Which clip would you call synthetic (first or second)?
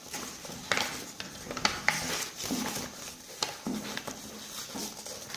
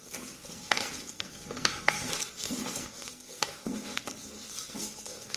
second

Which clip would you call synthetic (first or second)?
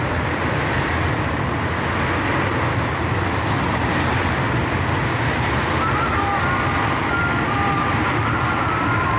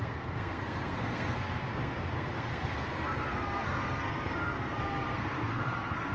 second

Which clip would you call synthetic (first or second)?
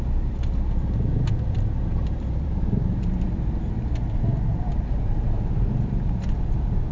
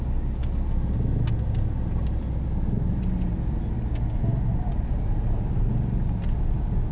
first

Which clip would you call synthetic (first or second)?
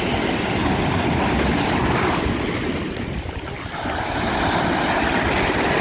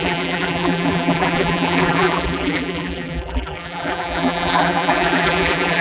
second